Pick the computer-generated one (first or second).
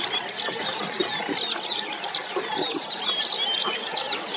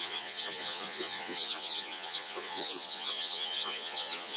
second